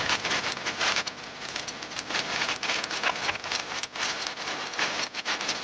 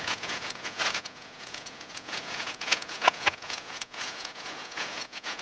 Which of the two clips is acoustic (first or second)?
first